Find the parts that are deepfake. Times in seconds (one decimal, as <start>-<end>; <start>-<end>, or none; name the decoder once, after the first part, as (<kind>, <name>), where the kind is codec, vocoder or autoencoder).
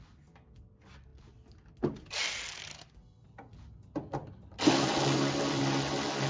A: none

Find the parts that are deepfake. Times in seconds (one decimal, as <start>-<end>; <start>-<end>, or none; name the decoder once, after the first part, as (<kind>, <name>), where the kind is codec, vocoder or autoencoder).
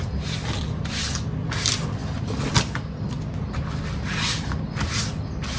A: none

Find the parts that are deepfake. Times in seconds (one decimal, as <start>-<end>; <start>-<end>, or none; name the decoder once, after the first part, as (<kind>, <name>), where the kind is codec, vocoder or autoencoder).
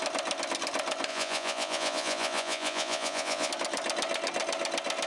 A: 1.1-3.5 (vocoder, Vocos)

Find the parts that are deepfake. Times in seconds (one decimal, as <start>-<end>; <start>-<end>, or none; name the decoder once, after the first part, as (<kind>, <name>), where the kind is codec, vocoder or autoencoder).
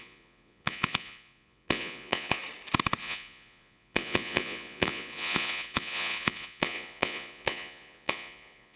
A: 0.0-2.4 (vocoder, Vocos); 3.0-8.8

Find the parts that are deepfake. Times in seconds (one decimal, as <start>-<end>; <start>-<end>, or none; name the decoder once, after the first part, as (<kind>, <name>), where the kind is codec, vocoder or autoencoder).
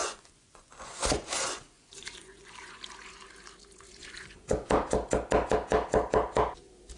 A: 0.0-2.8 (vocoder, Vocos); 4.0-4.7